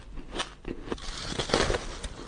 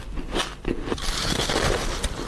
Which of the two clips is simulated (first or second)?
second